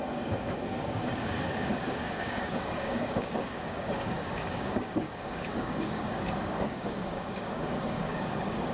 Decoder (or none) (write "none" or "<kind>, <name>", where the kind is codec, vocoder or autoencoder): codec, DAC